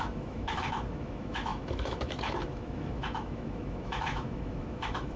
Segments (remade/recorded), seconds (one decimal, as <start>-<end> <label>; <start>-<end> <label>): 0.0-5.2 remade